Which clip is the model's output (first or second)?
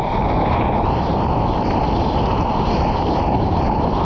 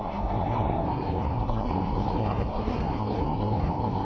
second